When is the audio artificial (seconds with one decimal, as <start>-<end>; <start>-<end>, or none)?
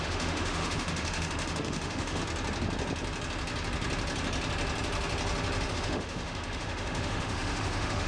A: 0.0-2.2; 5.7-8.1